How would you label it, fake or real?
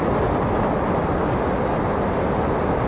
real